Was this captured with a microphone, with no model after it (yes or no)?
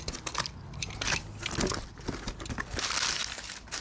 yes